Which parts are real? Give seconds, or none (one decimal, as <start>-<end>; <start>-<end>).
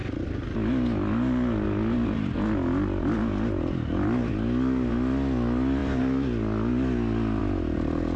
0.0-8.2